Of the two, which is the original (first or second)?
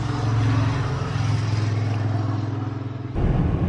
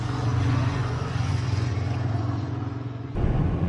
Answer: first